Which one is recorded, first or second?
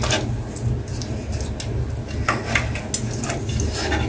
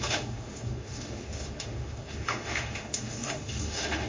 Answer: first